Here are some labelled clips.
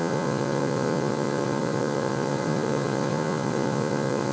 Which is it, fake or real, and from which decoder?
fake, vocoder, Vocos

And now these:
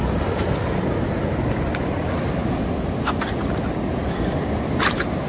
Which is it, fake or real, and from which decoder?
real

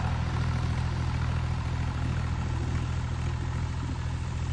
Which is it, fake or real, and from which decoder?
real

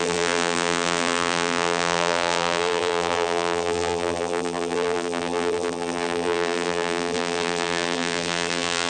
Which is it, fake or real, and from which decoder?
fake, vocoder, BigVGAN v2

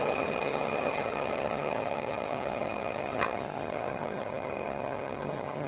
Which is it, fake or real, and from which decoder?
fake, vocoder, HiFi-GAN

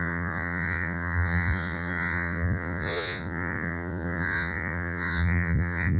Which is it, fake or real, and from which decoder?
fake, vocoder, Vocos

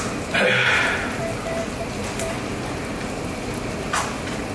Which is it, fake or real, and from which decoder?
real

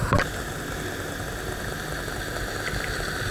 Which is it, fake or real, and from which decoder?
real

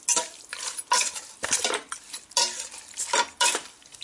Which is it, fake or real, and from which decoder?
real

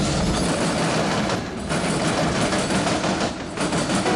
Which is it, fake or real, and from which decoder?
real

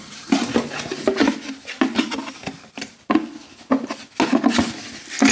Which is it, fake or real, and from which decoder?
real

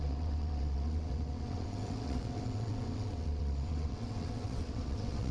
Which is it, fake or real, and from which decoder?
fake, vocoder, WaveNeXt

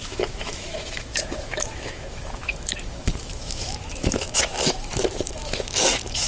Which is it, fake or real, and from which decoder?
fake, autoencoder, DAC-VAE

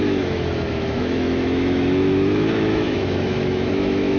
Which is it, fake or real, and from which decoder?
fake, autoencoder, DAC-VAE